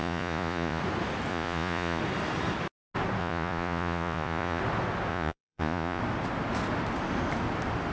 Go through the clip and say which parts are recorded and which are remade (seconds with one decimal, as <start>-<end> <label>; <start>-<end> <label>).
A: 0.0-0.8 remade; 0.8-1.3 recorded; 1.3-2.0 remade; 2.0-3.2 recorded; 3.2-4.6 remade; 4.6-5.1 recorded; 5.1-6.0 remade; 6.0-7.9 recorded